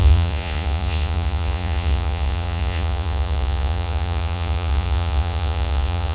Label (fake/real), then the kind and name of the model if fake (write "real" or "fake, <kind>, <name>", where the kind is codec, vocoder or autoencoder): fake, vocoder, Vocos